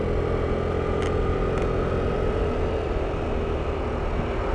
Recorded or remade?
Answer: recorded